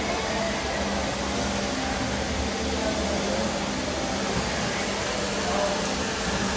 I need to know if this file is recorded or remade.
recorded